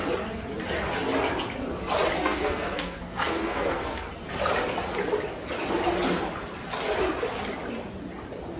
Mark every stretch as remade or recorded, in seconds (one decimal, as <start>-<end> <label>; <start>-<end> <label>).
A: 0.0-2.2 recorded; 2.2-4.1 remade; 4.1-8.6 recorded

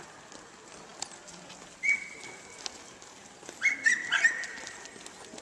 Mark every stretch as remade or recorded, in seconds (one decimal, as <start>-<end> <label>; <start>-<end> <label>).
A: 0.0-5.4 recorded

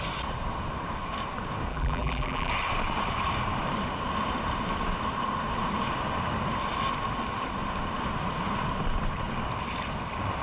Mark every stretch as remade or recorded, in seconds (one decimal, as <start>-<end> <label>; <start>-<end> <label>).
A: 0.0-1.7 recorded; 1.7-2.5 remade; 2.5-10.4 recorded

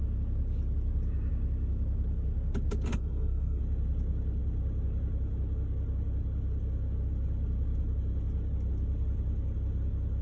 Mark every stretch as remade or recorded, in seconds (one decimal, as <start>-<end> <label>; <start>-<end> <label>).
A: 0.0-2.9 recorded; 2.9-3.6 remade; 3.6-10.2 recorded

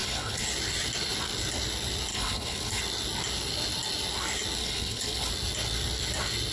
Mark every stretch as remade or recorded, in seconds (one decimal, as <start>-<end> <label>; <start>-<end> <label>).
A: 0.0-0.5 remade; 0.5-2.1 recorded; 2.1-2.8 remade; 2.8-4.6 recorded; 4.6-5.3 remade; 5.3-6.5 recorded